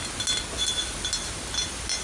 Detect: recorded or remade recorded